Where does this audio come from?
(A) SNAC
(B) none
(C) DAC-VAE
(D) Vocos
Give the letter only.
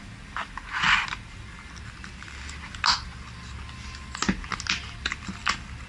B